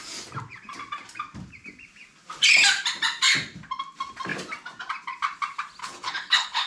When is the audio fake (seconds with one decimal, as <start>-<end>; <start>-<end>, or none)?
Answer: 5.8-6.7